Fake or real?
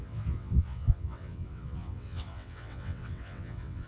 fake